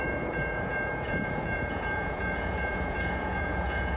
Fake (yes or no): yes